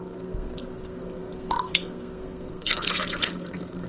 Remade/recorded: remade